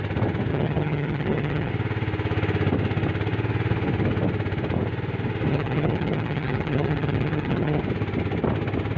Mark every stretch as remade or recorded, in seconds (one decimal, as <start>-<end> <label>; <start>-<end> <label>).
0.0-0.5 recorded; 0.5-1.7 remade; 1.7-5.5 recorded; 5.5-7.8 remade; 7.8-9.0 recorded